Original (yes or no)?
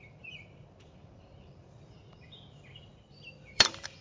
no